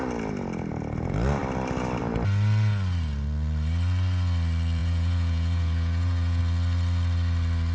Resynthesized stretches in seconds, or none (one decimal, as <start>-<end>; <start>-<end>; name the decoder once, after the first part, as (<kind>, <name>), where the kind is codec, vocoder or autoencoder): 4.8-6.4 (vocoder, Vocos)